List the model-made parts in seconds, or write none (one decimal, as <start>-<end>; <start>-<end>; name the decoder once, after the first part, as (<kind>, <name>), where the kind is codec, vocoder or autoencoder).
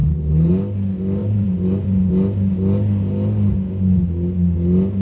0.0-0.5 (vocoder, BigVGAN v2); 1.2-2.1